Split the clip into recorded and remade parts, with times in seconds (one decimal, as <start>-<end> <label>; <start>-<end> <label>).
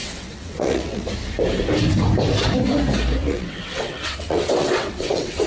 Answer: 0.0-1.1 remade; 1.1-3.2 recorded; 3.2-5.5 remade